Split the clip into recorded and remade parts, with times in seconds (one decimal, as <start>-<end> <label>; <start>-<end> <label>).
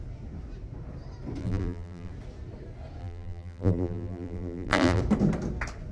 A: 0.0-1.4 recorded; 1.4-2.1 remade; 2.1-3.0 recorded; 3.0-5.0 remade; 5.0-5.9 recorded